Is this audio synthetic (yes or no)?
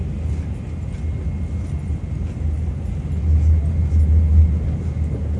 no